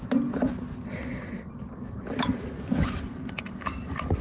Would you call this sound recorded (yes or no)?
yes